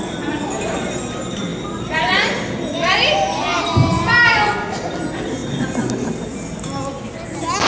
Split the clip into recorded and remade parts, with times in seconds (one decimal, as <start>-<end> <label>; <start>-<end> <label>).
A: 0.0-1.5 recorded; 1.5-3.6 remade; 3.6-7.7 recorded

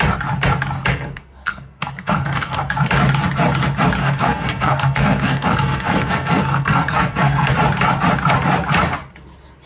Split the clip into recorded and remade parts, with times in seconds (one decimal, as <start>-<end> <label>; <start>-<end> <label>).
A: 0.0-0.9 recorded; 0.9-2.6 remade; 2.6-4.0 recorded; 4.0-7.5 remade; 7.5-9.7 recorded

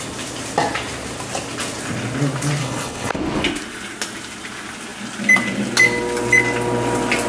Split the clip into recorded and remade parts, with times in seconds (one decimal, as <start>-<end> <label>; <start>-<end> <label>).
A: 0.0-2.6 recorded; 2.6-3.1 remade; 3.1-7.3 recorded

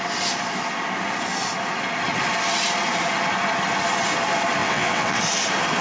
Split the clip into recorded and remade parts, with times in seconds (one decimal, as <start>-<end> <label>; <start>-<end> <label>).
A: 0.0-4.6 recorded; 4.6-5.2 remade; 5.2-5.8 recorded

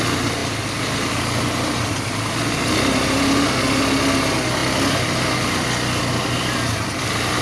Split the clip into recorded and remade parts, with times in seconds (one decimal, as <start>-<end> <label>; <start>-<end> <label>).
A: 0.0-7.4 recorded

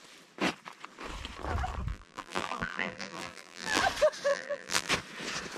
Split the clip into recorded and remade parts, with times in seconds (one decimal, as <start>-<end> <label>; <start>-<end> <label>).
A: 0.0-1.9 recorded; 1.9-3.8 remade; 3.8-4.3 recorded; 4.3-4.9 remade; 4.9-5.6 recorded

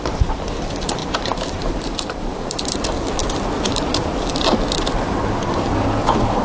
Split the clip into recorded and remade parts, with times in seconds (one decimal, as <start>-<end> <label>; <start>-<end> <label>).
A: 0.0-1.0 recorded; 1.0-2.8 remade; 2.8-6.4 recorded

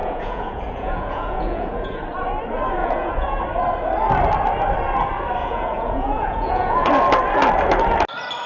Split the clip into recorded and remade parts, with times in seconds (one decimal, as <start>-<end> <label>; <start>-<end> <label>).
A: 0.0-2.0 remade; 2.0-2.8 recorded; 2.8-3.4 remade; 3.4-5.4 recorded; 5.4-6.9 remade; 6.9-8.5 recorded